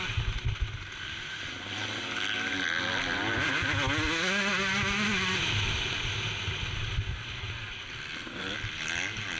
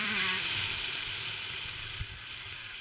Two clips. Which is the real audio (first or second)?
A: first